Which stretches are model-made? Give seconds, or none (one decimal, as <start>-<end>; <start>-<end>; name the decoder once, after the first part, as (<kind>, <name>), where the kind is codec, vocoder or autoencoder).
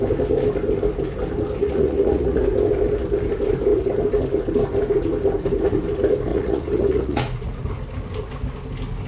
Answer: 1.6-2.4 (vocoder, Vocos); 6.3-7.6